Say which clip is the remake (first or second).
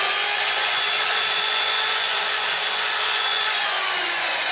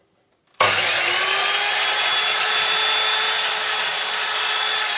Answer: first